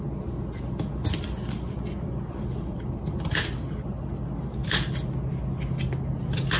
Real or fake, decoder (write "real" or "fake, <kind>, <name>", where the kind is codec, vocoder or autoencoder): real